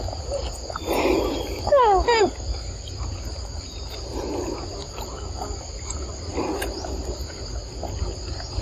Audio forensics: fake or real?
real